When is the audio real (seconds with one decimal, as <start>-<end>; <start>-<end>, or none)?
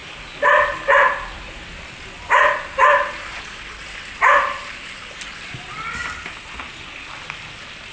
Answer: 0.0-7.9